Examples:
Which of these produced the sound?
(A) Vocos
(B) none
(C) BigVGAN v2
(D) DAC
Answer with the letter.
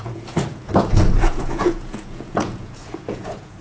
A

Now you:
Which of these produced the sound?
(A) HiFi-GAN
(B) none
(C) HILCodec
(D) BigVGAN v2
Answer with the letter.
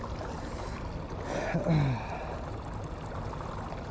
B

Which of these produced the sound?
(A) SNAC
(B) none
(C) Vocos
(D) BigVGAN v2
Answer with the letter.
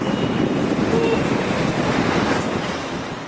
B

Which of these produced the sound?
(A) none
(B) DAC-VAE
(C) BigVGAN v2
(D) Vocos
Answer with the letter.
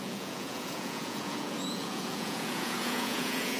D